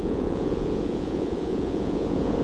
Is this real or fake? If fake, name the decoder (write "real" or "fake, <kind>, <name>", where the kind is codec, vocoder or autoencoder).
fake, vocoder, Vocos